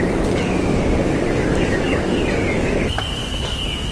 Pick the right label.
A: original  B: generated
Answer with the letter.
B